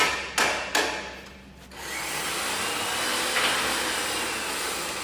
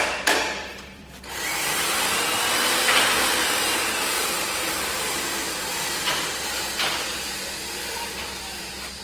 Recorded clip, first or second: first